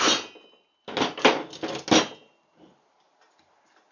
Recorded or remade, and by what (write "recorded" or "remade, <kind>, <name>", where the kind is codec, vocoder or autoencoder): recorded